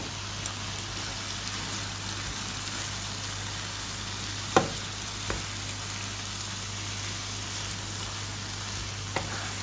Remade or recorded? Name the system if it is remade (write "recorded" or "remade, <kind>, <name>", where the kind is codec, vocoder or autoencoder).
recorded